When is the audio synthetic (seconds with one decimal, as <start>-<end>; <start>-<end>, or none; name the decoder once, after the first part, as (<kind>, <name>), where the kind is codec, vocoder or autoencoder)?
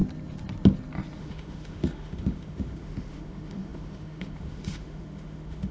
1.2-5.7 (autoencoder, DAC-VAE)